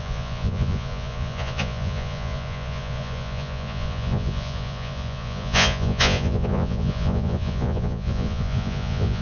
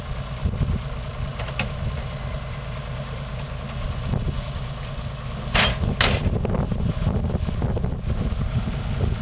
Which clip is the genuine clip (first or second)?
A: second